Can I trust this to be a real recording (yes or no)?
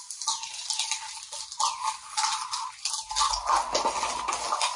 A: yes